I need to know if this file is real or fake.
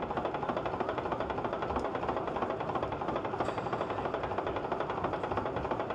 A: real